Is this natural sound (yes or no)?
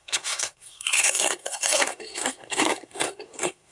no